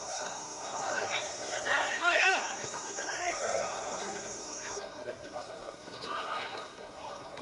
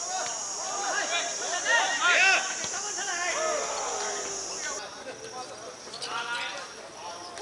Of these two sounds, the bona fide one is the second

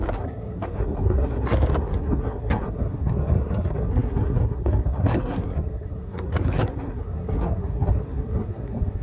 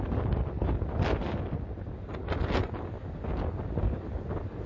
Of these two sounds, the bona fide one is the second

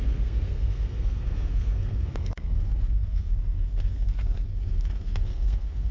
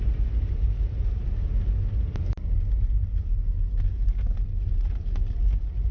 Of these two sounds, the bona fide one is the second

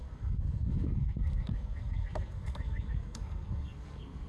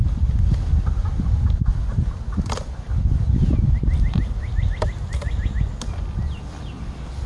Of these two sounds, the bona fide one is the second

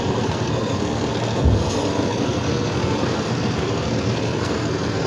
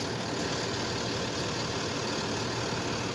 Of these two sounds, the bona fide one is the second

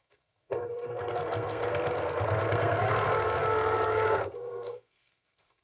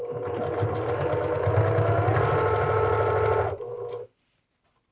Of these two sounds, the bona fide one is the second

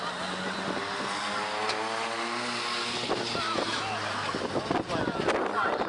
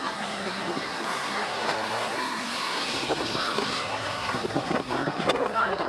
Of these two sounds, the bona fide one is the first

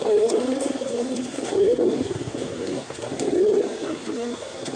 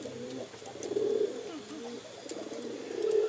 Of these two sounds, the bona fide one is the second